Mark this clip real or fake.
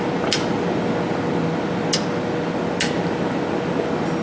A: real